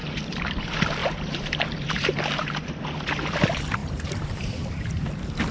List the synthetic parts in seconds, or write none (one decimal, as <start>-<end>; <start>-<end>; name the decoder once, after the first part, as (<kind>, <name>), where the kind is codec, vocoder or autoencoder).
0.0-0.6 (vocoder, BigVGAN v2); 1.0-2.7; 3.8-5.1